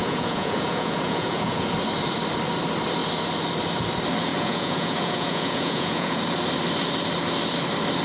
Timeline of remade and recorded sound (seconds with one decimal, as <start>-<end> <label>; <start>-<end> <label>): 0.0-1.7 remade; 1.7-4.3 recorded; 4.3-6.2 remade; 6.2-8.0 recorded